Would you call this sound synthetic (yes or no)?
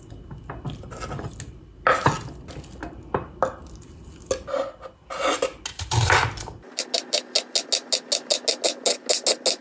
no